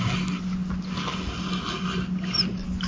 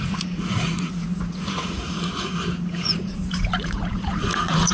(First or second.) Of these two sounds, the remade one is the second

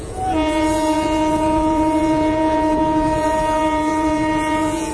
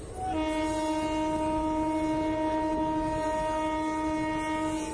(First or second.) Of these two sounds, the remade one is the first